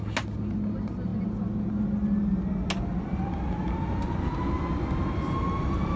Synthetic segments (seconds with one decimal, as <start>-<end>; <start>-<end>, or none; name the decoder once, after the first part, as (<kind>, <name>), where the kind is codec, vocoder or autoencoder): none